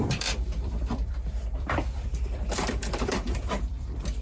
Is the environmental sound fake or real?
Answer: fake